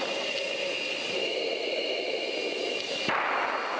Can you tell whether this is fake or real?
real